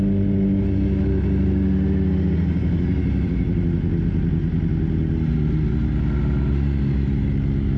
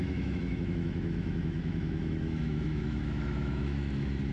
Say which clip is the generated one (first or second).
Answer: second